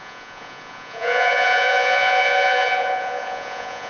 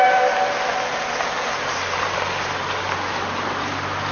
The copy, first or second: first